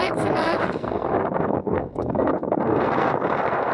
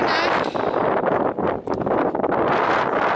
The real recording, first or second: second